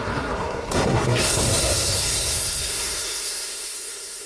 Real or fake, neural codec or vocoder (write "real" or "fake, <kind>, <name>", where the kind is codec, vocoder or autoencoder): fake, codec, SNAC